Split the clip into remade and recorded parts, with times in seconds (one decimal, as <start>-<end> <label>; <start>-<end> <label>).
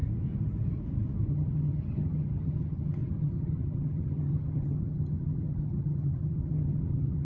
0.0-1.3 recorded; 1.3-7.2 remade